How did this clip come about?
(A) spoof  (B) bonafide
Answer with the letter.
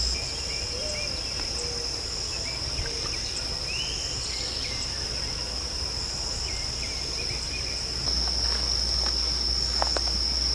B